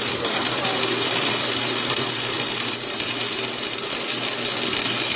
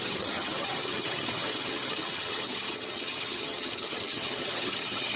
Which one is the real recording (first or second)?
first